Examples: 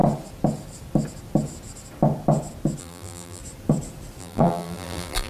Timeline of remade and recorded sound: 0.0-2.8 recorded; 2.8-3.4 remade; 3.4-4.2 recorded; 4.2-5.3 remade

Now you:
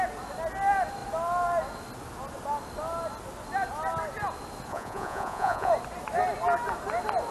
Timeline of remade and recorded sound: 0.0-4.7 recorded; 4.7-5.7 remade; 5.7-7.3 recorded